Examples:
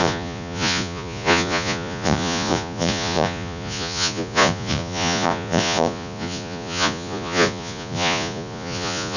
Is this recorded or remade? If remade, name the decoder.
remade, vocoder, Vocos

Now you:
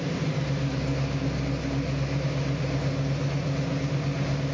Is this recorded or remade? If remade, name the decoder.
recorded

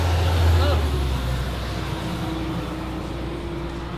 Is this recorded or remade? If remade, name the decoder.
recorded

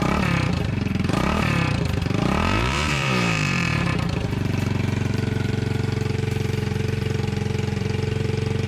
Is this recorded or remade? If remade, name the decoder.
remade, vocoder, BigVGAN v2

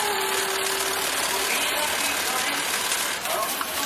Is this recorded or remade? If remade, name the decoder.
recorded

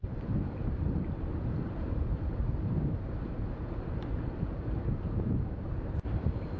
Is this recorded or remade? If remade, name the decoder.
remade, vocoder, BigVGAN v2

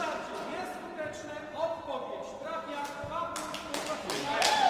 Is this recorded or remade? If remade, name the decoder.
recorded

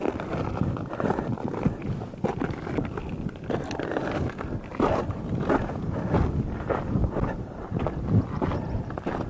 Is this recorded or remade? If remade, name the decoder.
recorded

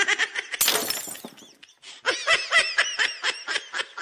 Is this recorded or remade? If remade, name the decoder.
recorded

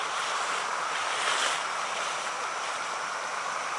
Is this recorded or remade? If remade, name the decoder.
recorded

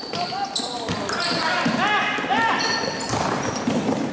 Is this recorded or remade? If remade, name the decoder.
recorded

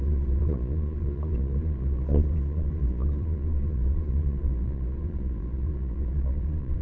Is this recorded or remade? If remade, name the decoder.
remade, vocoder, Vocos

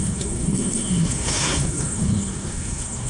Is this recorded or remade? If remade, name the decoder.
remade, codec, SNAC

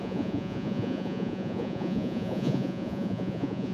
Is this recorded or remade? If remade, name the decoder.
remade, vocoder, Vocos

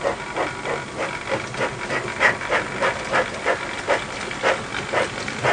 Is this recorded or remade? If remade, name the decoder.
recorded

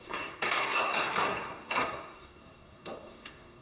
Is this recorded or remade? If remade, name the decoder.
remade, codec, SNAC